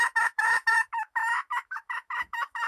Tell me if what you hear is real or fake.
fake